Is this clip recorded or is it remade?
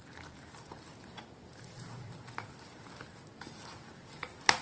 recorded